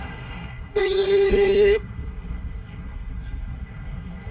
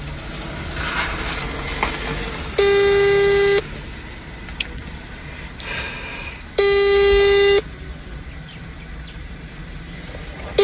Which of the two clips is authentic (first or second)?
second